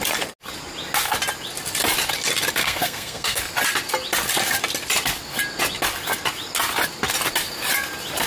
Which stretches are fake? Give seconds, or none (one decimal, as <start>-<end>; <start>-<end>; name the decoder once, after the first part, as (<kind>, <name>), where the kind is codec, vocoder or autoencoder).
2.6-3.4 (codec, SNAC)